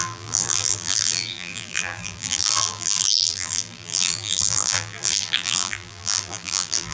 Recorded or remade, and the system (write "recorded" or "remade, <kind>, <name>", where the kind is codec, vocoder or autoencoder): remade, vocoder, BigVGAN v2